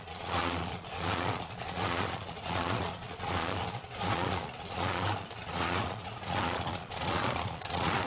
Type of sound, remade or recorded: remade